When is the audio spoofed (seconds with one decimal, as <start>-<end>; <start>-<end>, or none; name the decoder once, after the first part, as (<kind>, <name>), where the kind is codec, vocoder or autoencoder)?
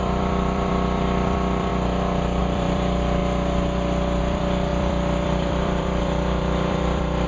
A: 0.0-1.7 (vocoder, BigVGAN v2); 2.4-3.2; 4.2-7.3